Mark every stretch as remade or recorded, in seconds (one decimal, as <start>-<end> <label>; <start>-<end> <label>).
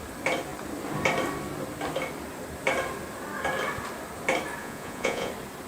0.0-4.6 recorded; 4.6-5.3 remade; 5.3-5.7 recorded